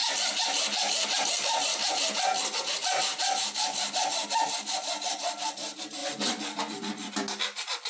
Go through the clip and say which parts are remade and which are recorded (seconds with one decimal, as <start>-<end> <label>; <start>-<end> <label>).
0.0-7.9 recorded